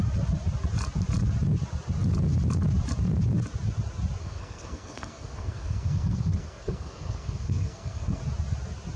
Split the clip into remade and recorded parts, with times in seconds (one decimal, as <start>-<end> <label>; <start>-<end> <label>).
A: 0.0-4.2 recorded; 4.2-8.2 remade; 8.2-9.0 recorded